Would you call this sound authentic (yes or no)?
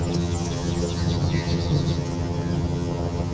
no